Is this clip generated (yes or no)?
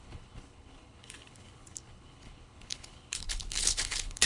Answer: yes